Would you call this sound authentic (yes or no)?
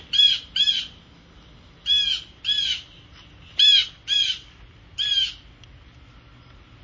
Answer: yes